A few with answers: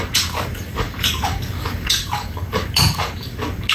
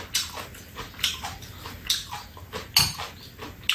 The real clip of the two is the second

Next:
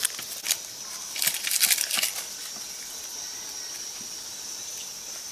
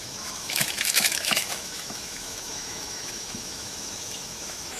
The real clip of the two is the first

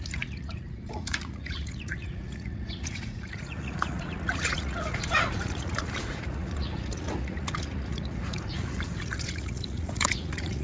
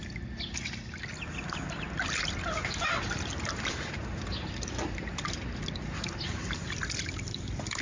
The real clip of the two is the second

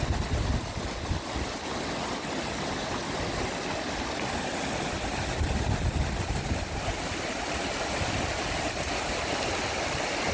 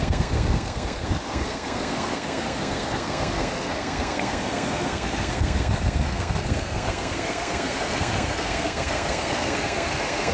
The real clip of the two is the first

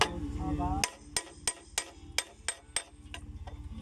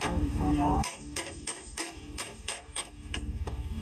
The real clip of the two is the first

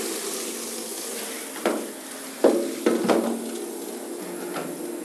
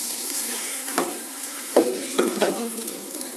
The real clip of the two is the first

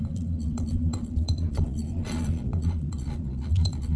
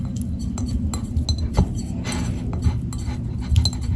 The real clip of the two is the second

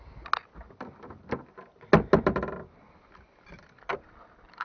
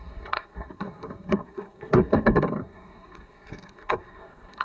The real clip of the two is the first